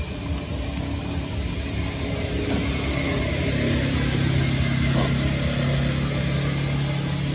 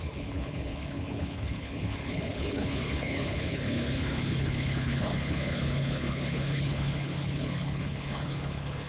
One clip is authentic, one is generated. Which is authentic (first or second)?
first